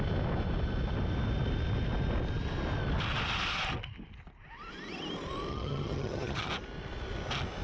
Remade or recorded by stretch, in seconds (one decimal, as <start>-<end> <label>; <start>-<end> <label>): 0.0-5.5 recorded; 5.5-6.5 remade; 6.5-7.6 recorded